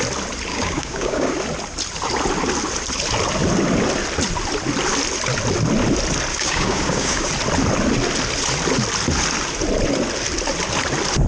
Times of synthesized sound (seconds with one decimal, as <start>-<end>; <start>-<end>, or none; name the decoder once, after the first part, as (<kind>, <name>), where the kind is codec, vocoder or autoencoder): 0.5-1.3 (codec, DAC); 6.3-7.3